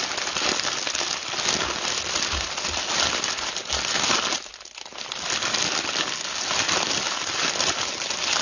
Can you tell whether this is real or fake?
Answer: real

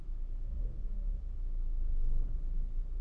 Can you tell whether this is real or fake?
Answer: real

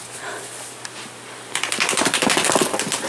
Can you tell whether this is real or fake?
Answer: real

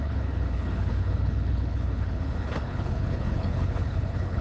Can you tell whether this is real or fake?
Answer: fake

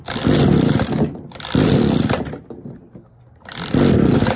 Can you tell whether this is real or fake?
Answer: real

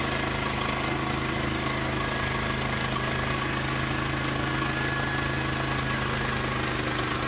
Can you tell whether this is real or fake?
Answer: real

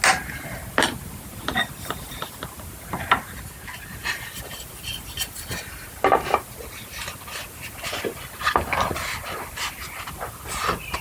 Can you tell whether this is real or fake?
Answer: real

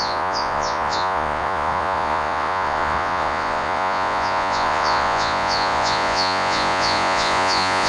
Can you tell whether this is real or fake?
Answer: fake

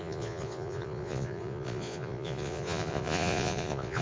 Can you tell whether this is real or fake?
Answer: fake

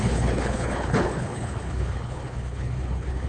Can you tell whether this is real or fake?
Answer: fake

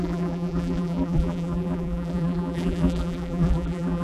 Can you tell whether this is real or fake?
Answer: fake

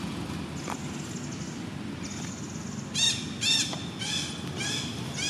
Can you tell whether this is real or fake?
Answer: real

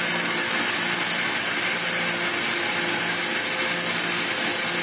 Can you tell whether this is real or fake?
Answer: real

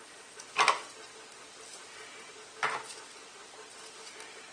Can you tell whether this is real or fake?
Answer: real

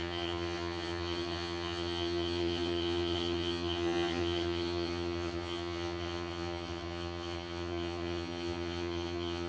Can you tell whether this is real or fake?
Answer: fake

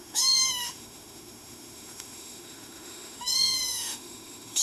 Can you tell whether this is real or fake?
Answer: fake